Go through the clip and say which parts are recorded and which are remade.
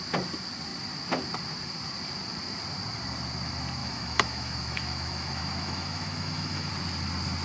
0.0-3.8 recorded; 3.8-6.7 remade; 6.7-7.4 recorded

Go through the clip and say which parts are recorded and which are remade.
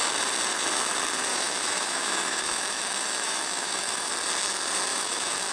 0.0-1.3 recorded; 1.3-4.1 remade; 4.1-4.9 recorded; 4.9-5.5 remade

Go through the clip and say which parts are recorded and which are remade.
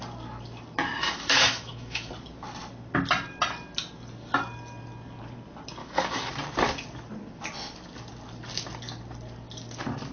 0.0-1.0 recorded; 1.0-2.1 remade; 2.1-5.8 recorded; 5.8-6.3 remade; 6.3-10.1 recorded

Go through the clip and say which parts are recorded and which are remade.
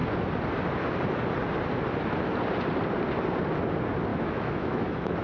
0.0-4.1 recorded; 4.1-5.2 remade